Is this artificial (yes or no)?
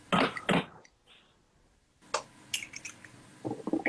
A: no